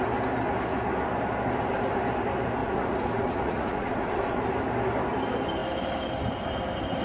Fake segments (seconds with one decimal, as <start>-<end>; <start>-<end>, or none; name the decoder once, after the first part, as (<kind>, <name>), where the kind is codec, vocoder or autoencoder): 2.6-4.4 (vocoder, Vocos)